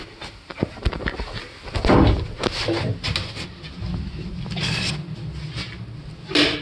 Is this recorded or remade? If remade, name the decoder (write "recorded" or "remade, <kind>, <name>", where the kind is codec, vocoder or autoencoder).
recorded